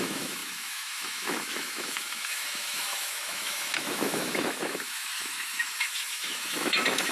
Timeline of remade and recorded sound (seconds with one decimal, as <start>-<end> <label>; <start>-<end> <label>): 0.0-7.1 remade